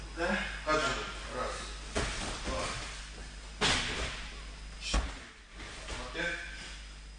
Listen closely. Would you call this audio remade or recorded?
recorded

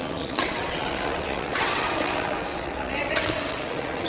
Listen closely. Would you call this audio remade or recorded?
remade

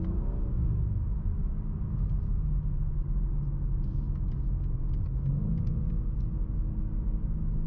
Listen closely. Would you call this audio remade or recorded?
recorded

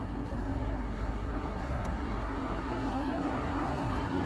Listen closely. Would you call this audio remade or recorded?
remade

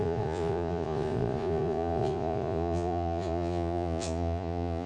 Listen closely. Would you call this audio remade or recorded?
remade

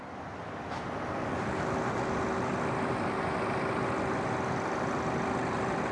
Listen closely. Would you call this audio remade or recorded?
recorded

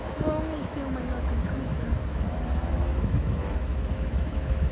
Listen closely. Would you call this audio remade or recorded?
remade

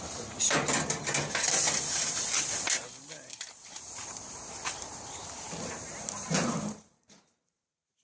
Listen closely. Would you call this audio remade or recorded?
remade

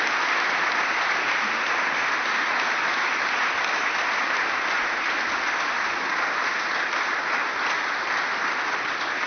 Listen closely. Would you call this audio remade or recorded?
recorded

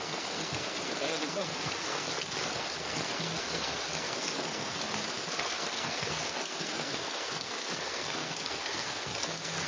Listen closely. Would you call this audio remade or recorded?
remade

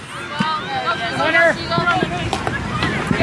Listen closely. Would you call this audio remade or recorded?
recorded